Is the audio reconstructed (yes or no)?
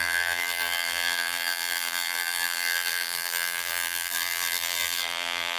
yes